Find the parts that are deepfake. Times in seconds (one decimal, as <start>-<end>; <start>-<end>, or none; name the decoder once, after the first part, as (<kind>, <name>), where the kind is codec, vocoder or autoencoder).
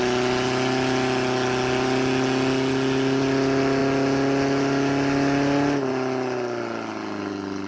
none